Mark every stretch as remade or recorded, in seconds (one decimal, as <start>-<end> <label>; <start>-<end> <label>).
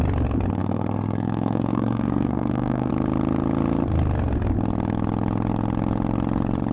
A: 0.0-0.6 recorded; 0.6-2.9 remade; 2.9-6.7 recorded